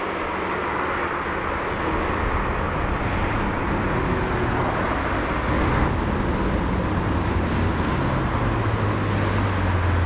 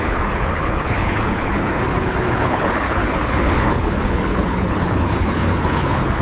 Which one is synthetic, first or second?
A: second